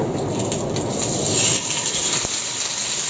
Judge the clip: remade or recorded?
recorded